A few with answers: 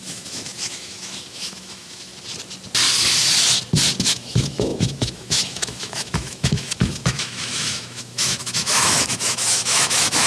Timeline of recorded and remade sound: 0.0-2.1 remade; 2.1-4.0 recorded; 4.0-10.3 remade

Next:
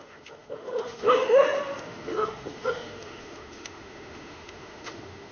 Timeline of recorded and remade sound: 0.0-5.3 remade

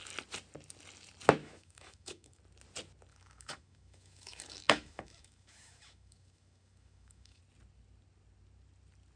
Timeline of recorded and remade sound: 0.0-1.4 recorded; 1.4-2.4 remade; 2.4-3.1 recorded; 3.1-7.4 remade; 7.4-9.2 recorded

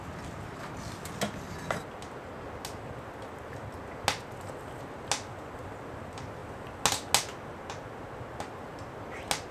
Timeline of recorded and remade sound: 0.0-9.5 recorded

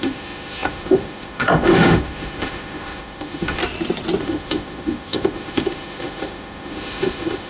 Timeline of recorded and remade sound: 0.0-3.6 remade; 3.6-4.2 recorded; 4.2-7.5 remade

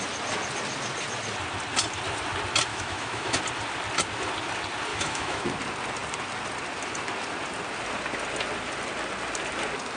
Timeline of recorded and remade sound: 0.0-2.7 recorded; 2.7-3.4 remade; 3.4-4.9 recorded; 4.9-5.5 remade; 5.5-10.0 recorded

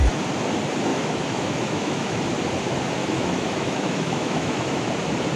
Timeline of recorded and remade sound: 0.0-0.9 recorded; 0.9-2.2 remade; 2.2-3.0 recorded; 3.0-4.9 remade; 4.9-5.4 recorded